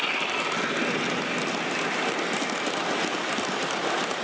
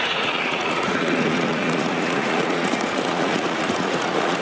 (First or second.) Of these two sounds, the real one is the first